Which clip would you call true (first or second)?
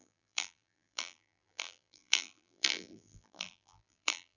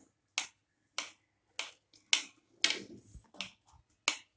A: second